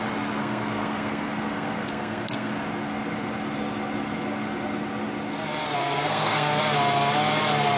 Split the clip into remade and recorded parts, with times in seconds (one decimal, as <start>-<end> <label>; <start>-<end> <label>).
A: 0.0-0.4 recorded; 0.4-2.5 remade; 2.5-5.8 recorded; 5.8-6.6 remade; 6.6-7.8 recorded